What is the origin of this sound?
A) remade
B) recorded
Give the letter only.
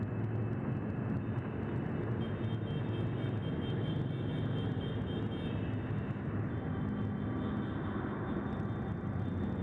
B